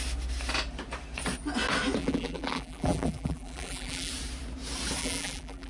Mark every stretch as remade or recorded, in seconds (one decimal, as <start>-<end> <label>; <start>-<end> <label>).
0.0-2.0 recorded; 2.0-4.1 remade; 4.1-5.0 recorded; 5.0-5.7 remade